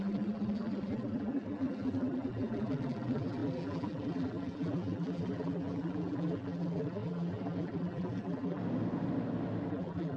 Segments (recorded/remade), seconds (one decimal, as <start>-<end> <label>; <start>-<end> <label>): 0.0-8.6 remade; 8.6-9.7 recorded; 9.7-10.2 remade